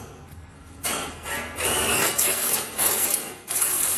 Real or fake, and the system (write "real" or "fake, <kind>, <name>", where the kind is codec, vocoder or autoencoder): fake, codec, SNAC